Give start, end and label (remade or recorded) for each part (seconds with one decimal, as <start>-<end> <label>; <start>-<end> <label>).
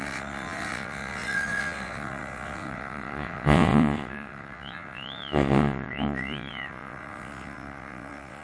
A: 0.0-8.4 remade